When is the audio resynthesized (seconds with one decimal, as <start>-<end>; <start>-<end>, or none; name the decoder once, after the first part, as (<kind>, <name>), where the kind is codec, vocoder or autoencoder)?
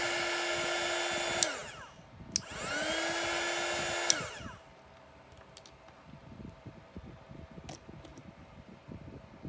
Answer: 8.1-8.8 (vocoder, BigVGAN v2)